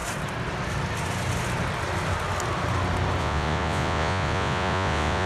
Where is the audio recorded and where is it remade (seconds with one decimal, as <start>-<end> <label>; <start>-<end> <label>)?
0.0-3.2 recorded; 3.2-5.3 remade